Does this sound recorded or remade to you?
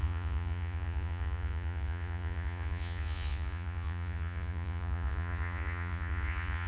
remade